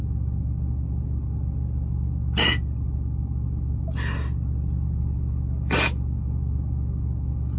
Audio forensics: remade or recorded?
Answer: recorded